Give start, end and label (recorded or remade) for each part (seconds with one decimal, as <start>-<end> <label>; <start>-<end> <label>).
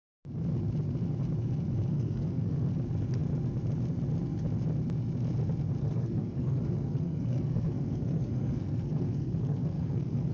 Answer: 0.0-1.9 recorded; 1.9-2.7 remade; 2.7-5.8 recorded; 5.8-10.3 remade